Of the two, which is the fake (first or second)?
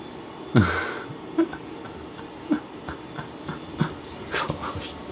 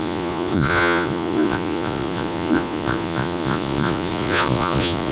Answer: second